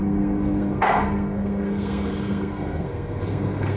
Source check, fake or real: fake